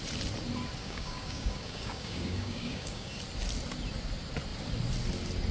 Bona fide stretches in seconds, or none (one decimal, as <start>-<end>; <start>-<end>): 0.0-0.8; 3.2-5.5